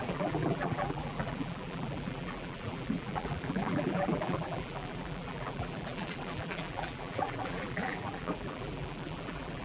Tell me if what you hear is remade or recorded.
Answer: remade